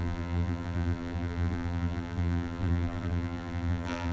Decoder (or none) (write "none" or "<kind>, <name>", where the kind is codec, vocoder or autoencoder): vocoder, BigVGAN v2